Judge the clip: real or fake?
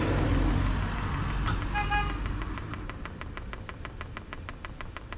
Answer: real